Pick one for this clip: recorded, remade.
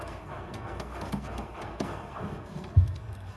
remade